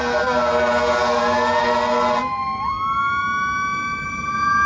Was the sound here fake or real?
real